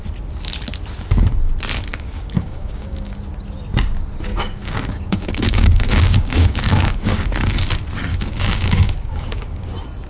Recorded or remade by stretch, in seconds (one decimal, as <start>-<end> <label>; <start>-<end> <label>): 0.0-1.9 recorded; 1.9-3.1 remade; 3.1-4.3 recorded; 4.3-7.6 remade; 7.6-8.1 recorded; 8.1-9.7 remade; 9.7-10.1 recorded